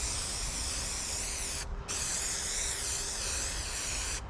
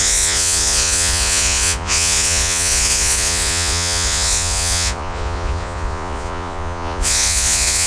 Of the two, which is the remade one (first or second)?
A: second